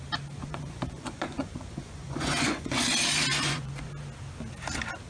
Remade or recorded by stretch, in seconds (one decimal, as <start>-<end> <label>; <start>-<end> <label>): 0.0-0.4 recorded; 0.4-2.9 remade; 2.9-3.3 recorded; 3.3-3.9 remade; 3.9-5.1 recorded